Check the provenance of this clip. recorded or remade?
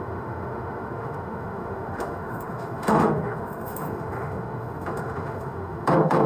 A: remade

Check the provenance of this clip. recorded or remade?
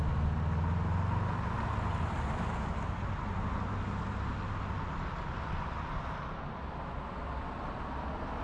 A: recorded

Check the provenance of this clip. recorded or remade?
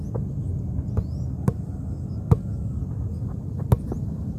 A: recorded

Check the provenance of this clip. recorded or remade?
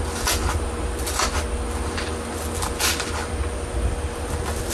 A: recorded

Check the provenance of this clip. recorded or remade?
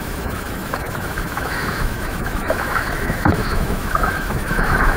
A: remade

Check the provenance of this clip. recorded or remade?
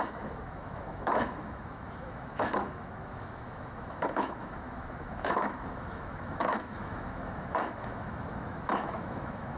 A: remade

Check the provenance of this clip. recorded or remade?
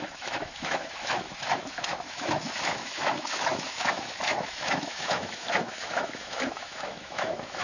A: remade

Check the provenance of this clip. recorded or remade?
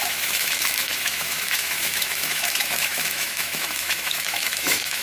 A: remade